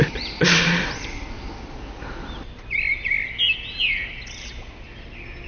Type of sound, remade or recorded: recorded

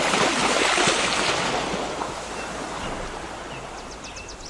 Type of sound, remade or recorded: recorded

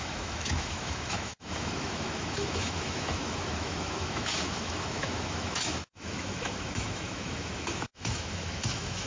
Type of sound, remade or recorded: remade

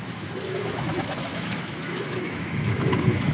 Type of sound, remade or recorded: remade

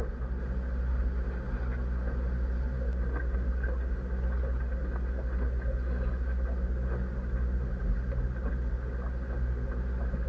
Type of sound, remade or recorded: recorded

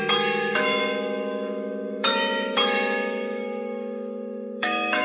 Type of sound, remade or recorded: remade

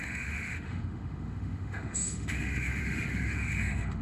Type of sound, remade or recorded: remade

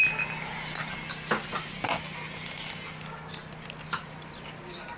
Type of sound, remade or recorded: recorded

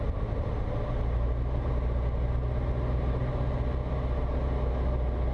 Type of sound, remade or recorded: recorded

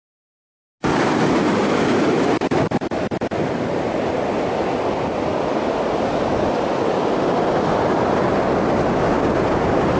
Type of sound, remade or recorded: recorded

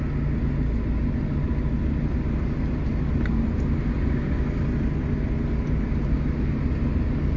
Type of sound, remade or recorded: recorded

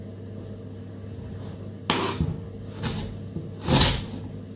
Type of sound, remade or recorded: recorded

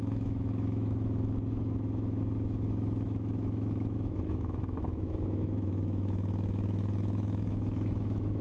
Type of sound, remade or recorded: remade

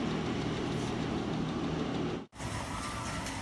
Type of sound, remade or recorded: recorded